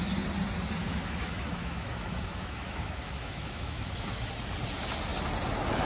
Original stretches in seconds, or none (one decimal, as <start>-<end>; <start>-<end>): 0.0-0.8; 4.3-5.8